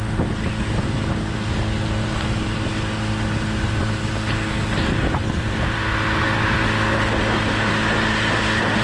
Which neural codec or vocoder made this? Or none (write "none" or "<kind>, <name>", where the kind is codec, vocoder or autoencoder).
none